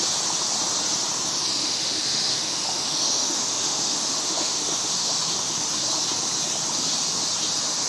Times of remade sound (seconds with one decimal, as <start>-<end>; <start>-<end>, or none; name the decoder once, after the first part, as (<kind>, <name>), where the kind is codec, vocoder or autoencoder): 1.6-5.7 (autoencoder, DAC-VAE)

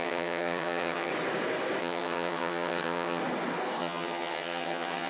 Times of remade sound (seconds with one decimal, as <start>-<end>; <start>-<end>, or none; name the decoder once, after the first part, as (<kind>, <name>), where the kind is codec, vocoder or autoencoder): 0.0-1.1 (vocoder, HiFi-GAN); 1.8-3.2; 3.8-5.1

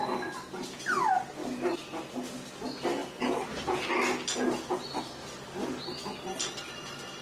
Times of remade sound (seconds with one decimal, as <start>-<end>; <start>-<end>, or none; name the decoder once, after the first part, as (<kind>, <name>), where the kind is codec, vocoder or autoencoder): none

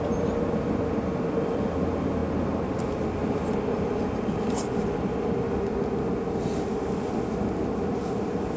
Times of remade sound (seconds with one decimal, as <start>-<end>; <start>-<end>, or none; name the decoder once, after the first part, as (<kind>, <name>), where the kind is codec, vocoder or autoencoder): none

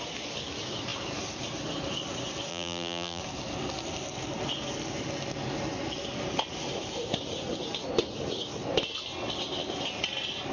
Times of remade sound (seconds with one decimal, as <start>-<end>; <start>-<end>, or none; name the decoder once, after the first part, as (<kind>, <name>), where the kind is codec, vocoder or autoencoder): 2.5-3.2 (vocoder, BigVGAN v2)

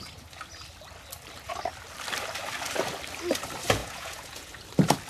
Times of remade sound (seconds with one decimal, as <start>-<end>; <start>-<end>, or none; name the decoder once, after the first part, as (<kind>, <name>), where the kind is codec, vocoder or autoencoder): 3.8-4.5 (vocoder, Vocos)

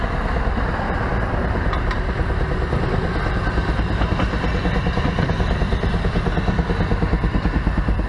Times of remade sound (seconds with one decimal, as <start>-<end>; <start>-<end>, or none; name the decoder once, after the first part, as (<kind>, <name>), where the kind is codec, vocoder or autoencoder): none